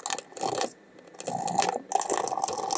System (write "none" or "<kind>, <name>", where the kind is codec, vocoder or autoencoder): none